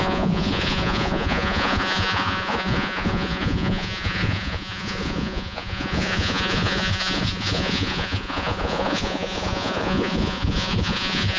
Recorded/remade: remade